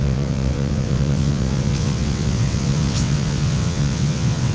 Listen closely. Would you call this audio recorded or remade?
remade